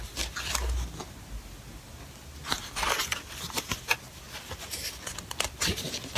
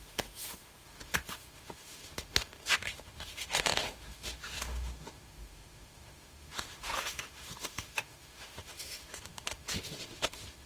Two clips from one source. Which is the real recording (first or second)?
first